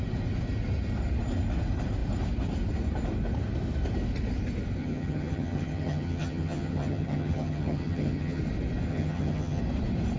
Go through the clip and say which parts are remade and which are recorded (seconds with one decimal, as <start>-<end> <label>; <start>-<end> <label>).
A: 0.0-4.8 recorded; 4.8-8.4 remade; 8.4-8.9 recorded; 8.9-9.6 remade; 9.6-10.2 recorded